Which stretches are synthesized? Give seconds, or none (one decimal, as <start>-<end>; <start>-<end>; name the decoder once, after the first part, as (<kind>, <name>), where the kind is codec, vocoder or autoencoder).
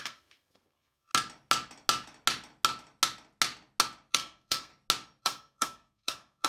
0.0-1.1 (codec, SNAC); 4.1-4.7; 5.2-6.5